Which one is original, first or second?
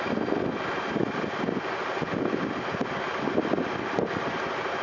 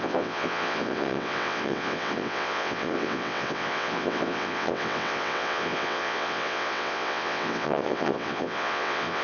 first